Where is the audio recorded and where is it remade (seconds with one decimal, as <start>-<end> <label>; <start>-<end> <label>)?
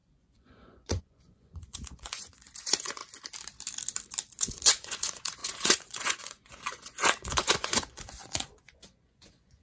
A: 0.0-3.0 remade; 3.0-4.4 recorded; 4.4-9.6 remade